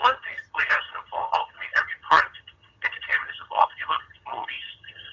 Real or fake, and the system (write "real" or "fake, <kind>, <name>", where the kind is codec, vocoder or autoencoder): fake, vocoder, HiFi-GAN